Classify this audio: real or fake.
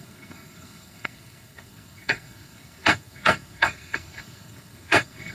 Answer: fake